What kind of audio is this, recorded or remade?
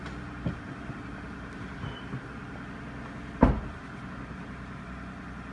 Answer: recorded